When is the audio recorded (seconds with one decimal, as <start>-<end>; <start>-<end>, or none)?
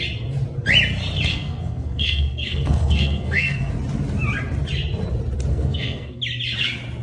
0.0-1.3; 3.7-5.5; 6.2-7.0